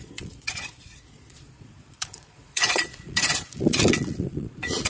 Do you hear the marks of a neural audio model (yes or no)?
yes